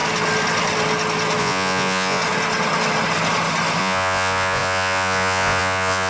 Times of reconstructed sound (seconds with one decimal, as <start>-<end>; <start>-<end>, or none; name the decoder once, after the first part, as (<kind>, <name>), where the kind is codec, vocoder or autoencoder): 1.4-2.2 (vocoder, Vocos); 3.8-6.1